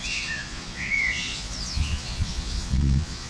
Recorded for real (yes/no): no